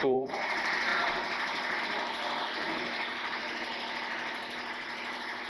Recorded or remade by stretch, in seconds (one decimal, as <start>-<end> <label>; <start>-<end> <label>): 0.0-3.7 remade; 3.7-4.7 recorded; 4.7-5.5 remade